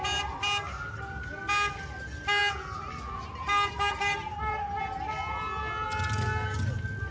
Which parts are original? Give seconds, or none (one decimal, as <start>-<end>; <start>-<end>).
0.0-4.3; 4.8-7.1

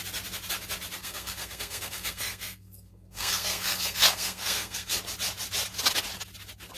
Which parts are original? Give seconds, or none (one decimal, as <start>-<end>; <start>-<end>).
0.0-1.0; 5.0-6.8

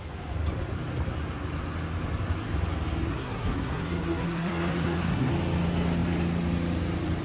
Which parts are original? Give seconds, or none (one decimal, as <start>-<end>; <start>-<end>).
0.0-3.1; 5.3-7.2

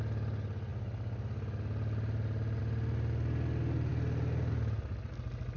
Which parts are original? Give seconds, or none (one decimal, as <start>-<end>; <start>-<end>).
0.0-5.6

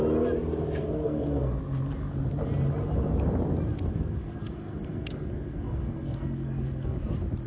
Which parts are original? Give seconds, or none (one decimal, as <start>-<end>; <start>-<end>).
0.0-0.8; 1.6-3.9; 7.0-7.5

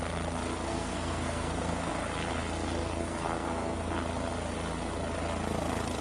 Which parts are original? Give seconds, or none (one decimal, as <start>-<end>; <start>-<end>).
0.0-0.7; 1.9-2.8; 3.9-6.0

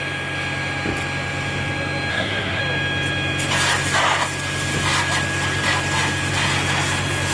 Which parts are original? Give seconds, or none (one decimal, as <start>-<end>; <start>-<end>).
0.0-2.1; 2.6-7.3

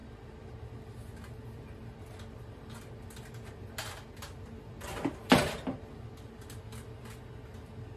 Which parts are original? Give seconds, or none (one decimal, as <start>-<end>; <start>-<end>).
0.0-8.0